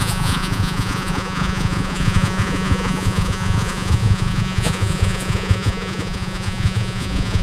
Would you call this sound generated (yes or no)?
yes